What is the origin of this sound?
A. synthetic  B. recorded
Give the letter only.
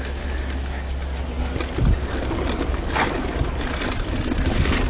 B